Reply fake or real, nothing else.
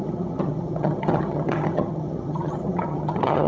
fake